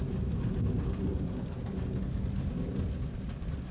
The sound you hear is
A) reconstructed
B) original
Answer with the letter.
B